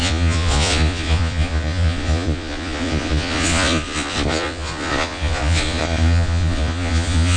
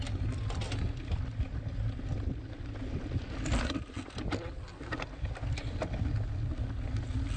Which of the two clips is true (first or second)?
second